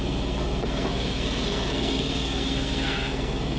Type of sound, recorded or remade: remade